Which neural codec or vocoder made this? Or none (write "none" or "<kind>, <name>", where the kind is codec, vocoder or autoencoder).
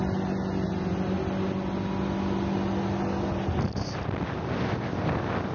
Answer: none